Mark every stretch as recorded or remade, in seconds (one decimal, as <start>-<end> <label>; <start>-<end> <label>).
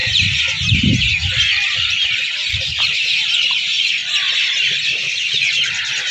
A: 0.0-6.1 recorded